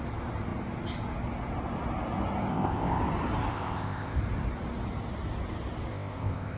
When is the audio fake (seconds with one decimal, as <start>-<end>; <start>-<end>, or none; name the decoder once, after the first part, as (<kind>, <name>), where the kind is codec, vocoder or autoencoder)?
2.5-3.0 (codec, ZipCodec); 3.5-4.2; 5.9-6.6